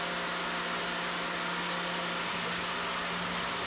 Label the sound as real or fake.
real